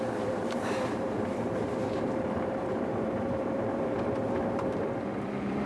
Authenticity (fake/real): fake